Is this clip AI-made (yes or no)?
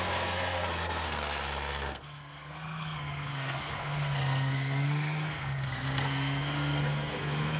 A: yes